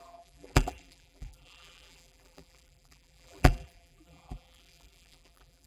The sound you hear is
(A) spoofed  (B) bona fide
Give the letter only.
A